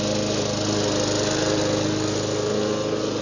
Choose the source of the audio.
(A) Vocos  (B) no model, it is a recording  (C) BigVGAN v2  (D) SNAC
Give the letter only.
B